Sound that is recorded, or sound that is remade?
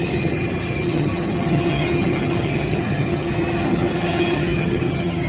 remade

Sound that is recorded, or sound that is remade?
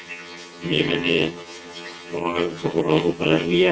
remade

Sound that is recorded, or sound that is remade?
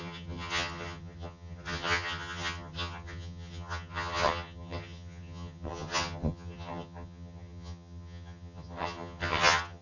remade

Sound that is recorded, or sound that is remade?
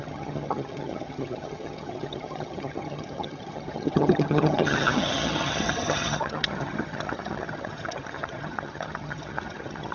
remade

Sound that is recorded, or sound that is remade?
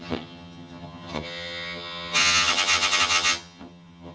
remade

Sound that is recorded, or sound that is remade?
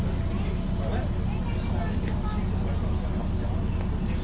recorded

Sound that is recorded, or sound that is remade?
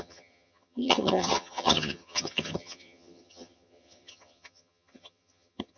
remade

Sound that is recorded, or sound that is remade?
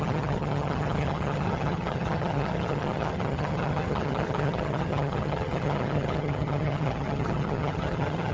remade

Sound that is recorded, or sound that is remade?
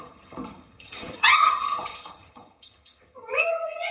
remade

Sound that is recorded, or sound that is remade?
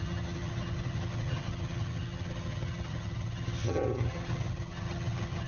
remade